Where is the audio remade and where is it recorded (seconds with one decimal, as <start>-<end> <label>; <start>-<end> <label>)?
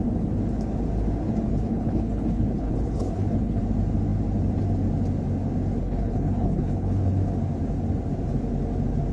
0.0-1.5 recorded; 1.5-3.6 remade; 3.6-5.8 recorded; 5.8-7.0 remade; 7.0-9.1 recorded